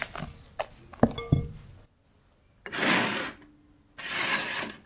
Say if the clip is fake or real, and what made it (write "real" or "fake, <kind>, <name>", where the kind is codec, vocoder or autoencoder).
real